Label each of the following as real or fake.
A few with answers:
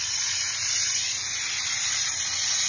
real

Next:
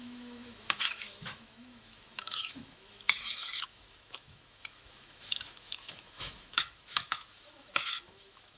fake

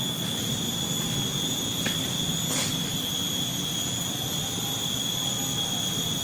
real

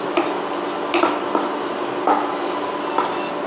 fake